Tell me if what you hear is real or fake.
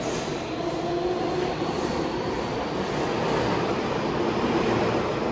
real